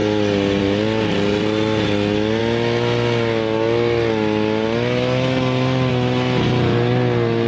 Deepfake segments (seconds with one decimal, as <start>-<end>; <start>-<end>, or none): none